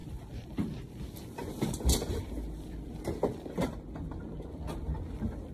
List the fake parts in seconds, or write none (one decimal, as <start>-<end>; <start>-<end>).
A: 0.0-3.0